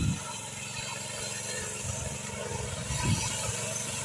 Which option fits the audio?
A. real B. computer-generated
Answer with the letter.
A